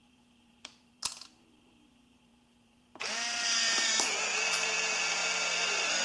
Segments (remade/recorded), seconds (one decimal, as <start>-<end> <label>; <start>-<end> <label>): 0.0-6.0 remade